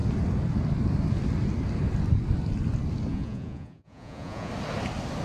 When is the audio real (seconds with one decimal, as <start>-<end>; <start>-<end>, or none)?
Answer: 0.0-3.1; 4.5-5.2